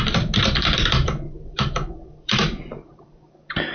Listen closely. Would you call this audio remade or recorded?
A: remade